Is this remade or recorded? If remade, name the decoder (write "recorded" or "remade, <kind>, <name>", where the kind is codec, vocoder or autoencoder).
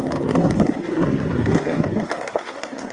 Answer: remade, codec, SNAC